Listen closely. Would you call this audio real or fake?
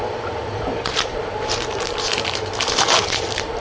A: fake